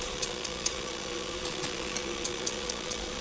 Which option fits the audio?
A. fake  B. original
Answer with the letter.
A